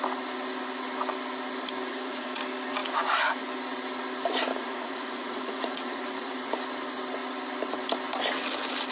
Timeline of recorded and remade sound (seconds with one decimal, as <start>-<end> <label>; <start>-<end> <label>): 0.0-1.9 recorded; 1.9-2.4 remade; 2.4-4.5 recorded; 4.5-6.5 remade; 6.5-8.9 recorded